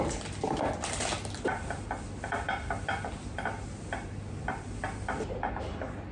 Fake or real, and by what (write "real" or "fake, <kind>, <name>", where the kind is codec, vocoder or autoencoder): real